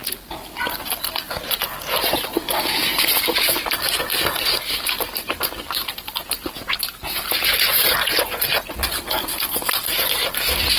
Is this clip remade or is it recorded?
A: recorded